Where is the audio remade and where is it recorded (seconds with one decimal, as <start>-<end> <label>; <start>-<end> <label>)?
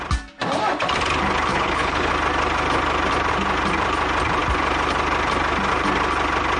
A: 0.0-1.5 recorded; 1.5-2.1 remade; 2.1-6.6 recorded